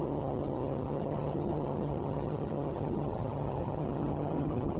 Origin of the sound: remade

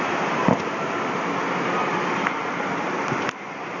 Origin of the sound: recorded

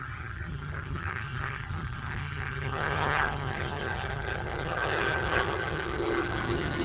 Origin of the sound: remade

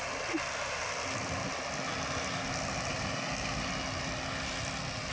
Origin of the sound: recorded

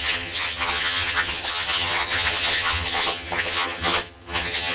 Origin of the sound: remade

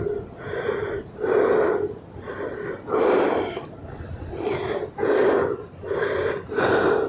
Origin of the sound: recorded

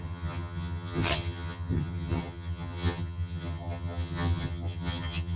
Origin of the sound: remade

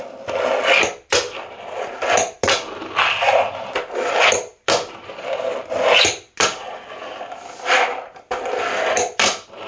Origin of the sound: recorded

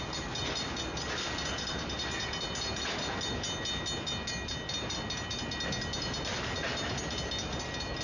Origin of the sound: recorded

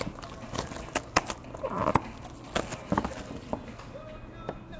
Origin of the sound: recorded